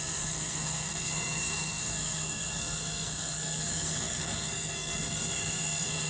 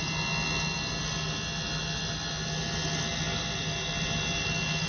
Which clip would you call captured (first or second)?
second